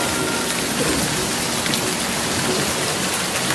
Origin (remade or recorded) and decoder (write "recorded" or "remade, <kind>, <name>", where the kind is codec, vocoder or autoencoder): recorded